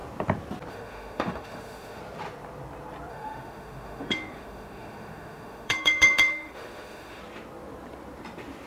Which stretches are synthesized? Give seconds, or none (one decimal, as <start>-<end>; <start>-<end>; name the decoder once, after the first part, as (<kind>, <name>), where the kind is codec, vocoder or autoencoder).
0.7-2.0 (autoencoder, DAC-VAE); 3.1-7.2